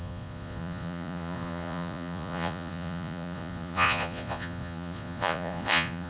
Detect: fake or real fake